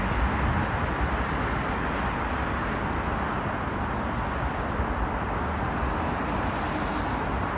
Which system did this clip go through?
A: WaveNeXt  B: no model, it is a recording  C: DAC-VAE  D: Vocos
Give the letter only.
B